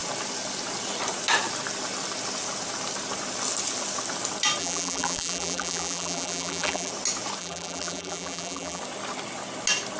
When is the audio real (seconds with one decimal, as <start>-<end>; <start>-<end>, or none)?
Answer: 0.0-4.6; 6.9-7.4; 8.8-10.0

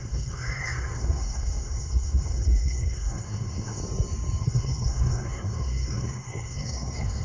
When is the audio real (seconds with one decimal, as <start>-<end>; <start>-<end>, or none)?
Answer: 3.8-4.4